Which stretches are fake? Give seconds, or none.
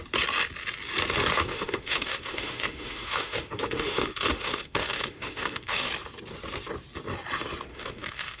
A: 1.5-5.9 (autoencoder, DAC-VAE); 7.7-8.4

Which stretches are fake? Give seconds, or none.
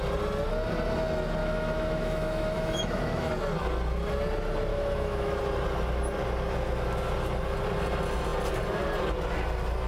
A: 1.4-3.3 (autoencoder, DAC-VAE); 4.7-5.4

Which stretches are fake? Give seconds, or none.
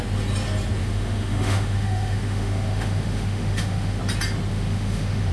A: 0.8-4.0 (autoencoder, DAC-VAE); 4.5-5.3